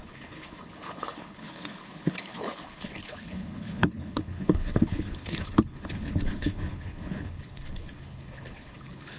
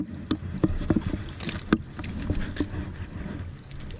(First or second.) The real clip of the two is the second